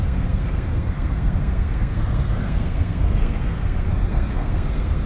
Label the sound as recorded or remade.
remade